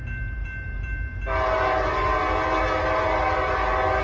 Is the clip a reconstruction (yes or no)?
no